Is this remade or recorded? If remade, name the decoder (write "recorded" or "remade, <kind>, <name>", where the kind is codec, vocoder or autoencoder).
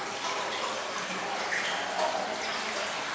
recorded